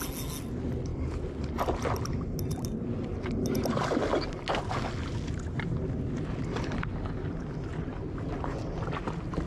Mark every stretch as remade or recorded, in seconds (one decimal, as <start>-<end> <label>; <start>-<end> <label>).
0.0-9.5 recorded